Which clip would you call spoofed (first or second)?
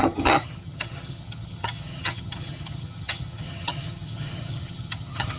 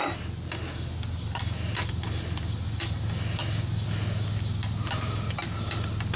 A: first